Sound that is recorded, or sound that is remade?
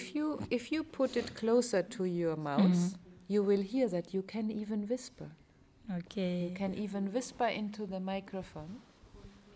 recorded